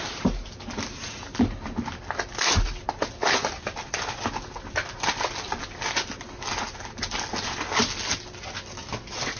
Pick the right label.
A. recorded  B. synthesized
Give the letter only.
A